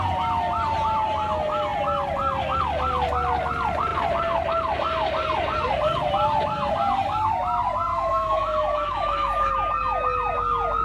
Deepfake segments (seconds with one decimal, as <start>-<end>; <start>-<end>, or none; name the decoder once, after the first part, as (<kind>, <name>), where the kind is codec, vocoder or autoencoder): 7.9-9.5 (autoencoder, DAC-VAE)